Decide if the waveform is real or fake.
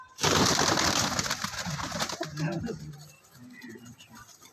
real